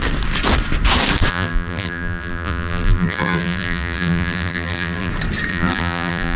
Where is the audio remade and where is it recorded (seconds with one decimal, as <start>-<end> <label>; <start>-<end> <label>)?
0.0-1.3 recorded; 1.3-5.1 remade; 5.1-5.5 recorded; 5.5-6.4 remade